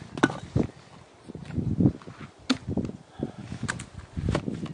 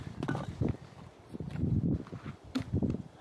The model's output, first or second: second